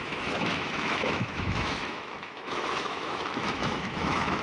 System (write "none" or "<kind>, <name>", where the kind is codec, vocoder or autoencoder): autoencoder, DAC-VAE